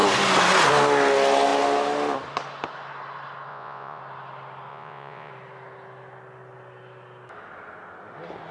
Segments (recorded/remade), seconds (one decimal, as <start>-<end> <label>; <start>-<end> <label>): 0.0-3.5 recorded; 3.5-4.0 remade; 4.0-4.7 recorded; 4.7-5.3 remade; 5.3-8.5 recorded

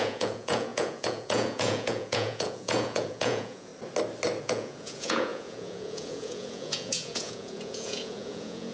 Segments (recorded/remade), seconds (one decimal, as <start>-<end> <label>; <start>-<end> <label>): 0.0-3.7 remade; 3.7-4.4 recorded; 4.4-8.7 remade

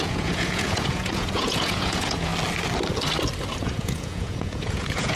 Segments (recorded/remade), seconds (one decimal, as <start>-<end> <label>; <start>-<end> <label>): 0.0-2.3 remade; 2.3-3.6 recorded; 3.6-5.2 remade

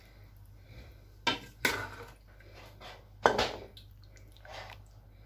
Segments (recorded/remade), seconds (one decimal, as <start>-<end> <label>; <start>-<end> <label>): 0.0-5.3 recorded

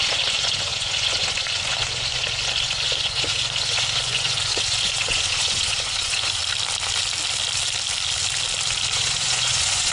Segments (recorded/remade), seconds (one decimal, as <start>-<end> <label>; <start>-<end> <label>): 0.0-6.4 remade; 6.4-8.9 recorded; 8.9-9.9 remade

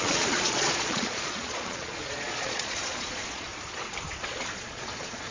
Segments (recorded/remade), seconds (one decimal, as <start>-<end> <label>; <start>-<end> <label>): 0.0-3.5 remade; 3.5-4.2 recorded; 4.2-5.3 remade

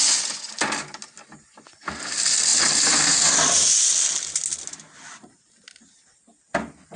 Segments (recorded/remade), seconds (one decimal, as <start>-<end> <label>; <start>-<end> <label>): 0.0-0.5 remade; 0.5-7.0 recorded